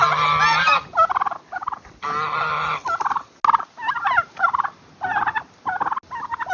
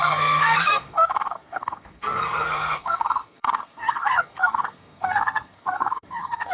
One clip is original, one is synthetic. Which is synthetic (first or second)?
second